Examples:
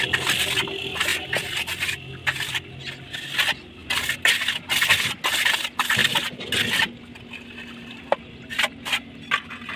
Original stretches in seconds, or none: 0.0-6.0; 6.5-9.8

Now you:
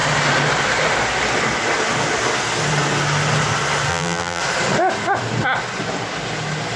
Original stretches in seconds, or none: 0.0-3.9; 4.4-6.8